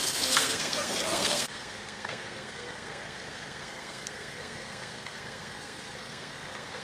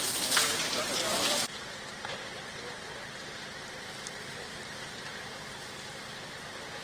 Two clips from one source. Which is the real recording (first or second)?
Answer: second